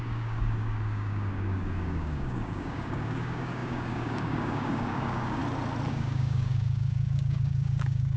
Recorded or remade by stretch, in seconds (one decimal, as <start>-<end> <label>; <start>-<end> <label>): 0.0-5.4 remade; 5.4-5.9 recorded; 5.9-8.2 remade